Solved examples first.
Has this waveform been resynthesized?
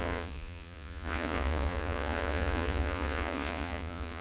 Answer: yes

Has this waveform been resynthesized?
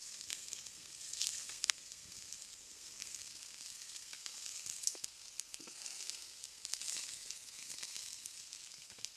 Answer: yes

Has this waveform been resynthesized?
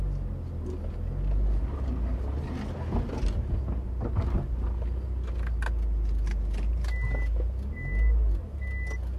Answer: no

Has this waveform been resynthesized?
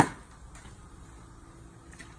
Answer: no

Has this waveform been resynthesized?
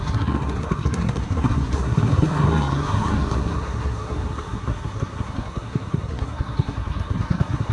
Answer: yes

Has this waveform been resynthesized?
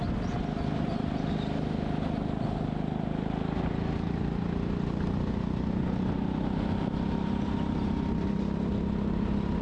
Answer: no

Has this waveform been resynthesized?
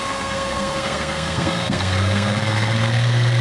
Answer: yes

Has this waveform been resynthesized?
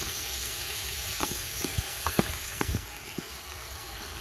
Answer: yes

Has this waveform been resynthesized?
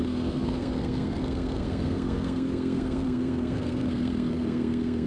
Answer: yes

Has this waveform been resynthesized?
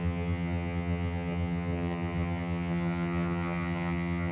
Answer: yes